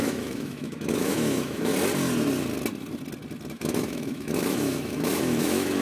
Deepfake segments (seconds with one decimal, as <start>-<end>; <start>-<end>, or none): 0.0-1.7; 3.5-5.8